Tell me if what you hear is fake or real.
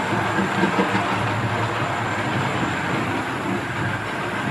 real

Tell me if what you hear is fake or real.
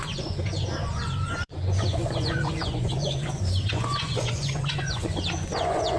fake